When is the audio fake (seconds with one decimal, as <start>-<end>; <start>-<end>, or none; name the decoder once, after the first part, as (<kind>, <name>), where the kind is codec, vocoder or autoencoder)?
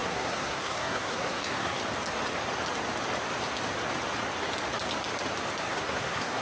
0.0-1.8 (codec, SNAC); 5.6-6.4